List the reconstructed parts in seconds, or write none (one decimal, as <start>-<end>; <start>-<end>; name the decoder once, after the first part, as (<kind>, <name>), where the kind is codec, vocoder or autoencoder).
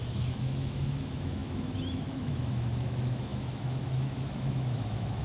0.0-5.2 (autoencoder, DAC-VAE)